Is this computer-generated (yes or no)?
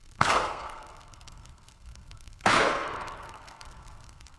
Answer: yes